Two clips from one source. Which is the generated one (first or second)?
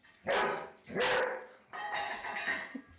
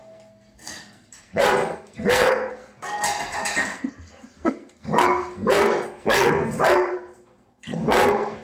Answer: second